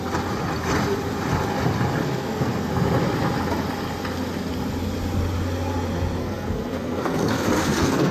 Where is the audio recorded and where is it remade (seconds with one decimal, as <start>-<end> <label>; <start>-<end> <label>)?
0.0-2.0 recorded; 2.0-2.7 remade; 2.7-6.2 recorded; 6.2-8.1 remade